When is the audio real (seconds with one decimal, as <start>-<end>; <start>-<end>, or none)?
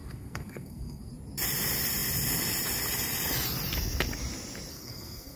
1.1-4.7